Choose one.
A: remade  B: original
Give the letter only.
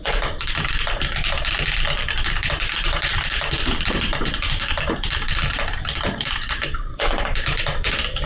A